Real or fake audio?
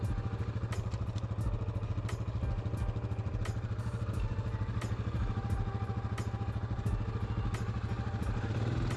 real